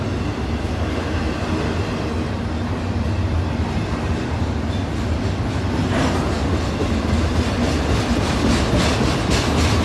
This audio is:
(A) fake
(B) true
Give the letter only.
B